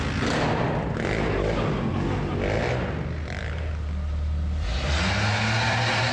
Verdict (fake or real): real